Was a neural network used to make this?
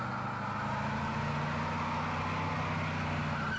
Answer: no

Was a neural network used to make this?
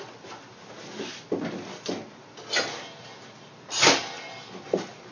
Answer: no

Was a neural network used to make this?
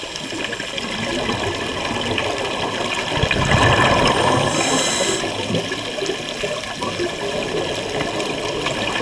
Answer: no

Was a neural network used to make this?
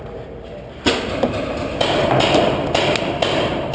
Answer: no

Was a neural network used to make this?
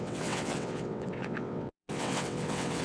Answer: yes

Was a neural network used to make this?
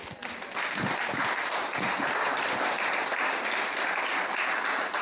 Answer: no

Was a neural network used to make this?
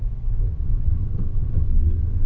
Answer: yes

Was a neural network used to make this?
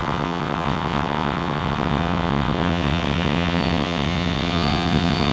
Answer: yes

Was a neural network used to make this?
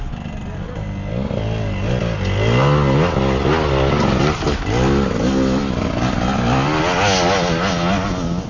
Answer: no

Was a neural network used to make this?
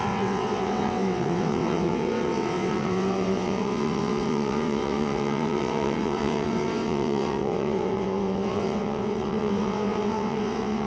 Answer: yes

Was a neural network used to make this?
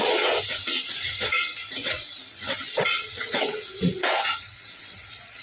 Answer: yes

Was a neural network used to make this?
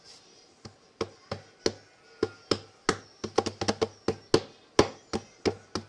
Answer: no